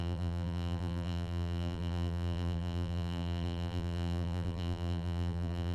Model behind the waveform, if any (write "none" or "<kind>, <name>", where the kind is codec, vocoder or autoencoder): vocoder, BigVGAN v2